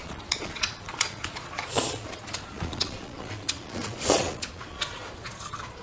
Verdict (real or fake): fake